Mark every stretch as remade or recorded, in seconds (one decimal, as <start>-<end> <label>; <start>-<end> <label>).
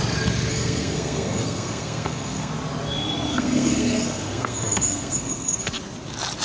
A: 0.0-0.5 recorded; 0.5-2.5 remade; 2.5-3.3 recorded; 3.3-5.8 remade; 5.8-6.4 recorded